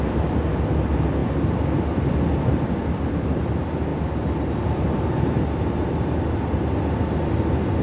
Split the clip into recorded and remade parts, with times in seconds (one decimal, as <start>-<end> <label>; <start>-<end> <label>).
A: 0.0-7.8 recorded